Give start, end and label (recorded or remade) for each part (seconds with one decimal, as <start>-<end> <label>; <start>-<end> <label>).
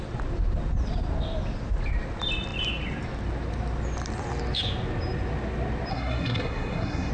0.0-5.9 recorded; 5.9-7.1 remade